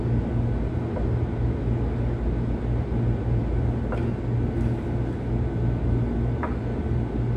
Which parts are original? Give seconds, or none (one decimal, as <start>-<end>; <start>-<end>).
0.0-7.4